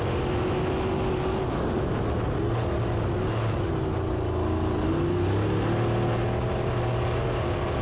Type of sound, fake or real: real